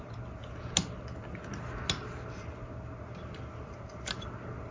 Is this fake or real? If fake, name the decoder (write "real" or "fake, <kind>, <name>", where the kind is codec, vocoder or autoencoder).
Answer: real